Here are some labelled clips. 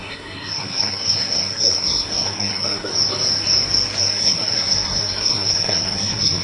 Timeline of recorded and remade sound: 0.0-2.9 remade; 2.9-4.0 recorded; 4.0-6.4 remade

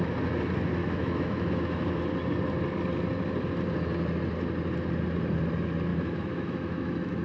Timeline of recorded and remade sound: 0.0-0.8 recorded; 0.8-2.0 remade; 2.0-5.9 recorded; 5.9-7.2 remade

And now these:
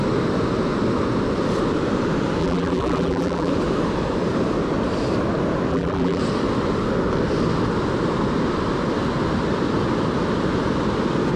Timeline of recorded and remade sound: 0.0-2.4 recorded; 2.4-3.5 remade; 3.5-5.7 recorded; 5.7-6.2 remade; 6.2-11.4 recorded

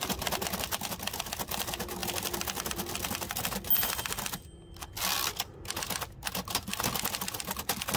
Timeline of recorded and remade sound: 0.0-8.0 recorded